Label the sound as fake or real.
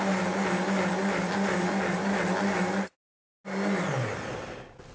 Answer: real